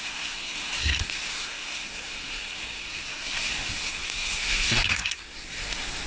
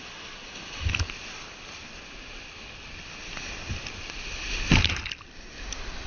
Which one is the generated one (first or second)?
first